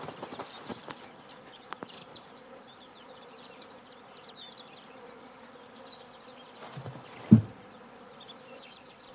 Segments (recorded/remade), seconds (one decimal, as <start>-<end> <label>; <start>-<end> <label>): 0.0-0.7 recorded; 0.7-3.9 remade; 3.9-9.1 recorded